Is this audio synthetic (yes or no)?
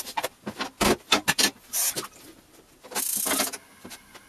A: no